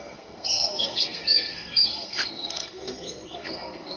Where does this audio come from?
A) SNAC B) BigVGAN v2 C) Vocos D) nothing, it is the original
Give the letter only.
A